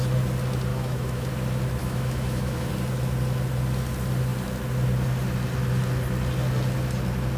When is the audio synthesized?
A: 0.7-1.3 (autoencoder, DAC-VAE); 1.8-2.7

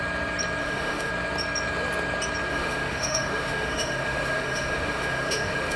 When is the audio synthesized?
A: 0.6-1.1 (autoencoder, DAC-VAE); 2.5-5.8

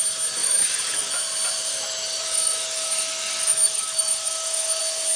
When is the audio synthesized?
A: 0.4-1.1 (autoencoder, DAC-VAE); 1.7-4.8

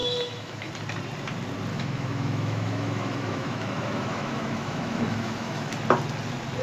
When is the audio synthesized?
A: 0.0-0.7 (autoencoder, DAC-VAE); 1.7-5.7

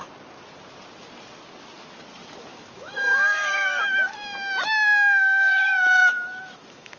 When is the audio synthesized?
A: 2.5-7.0 (autoencoder, DAC-VAE)